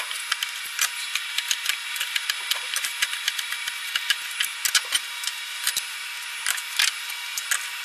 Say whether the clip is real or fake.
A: real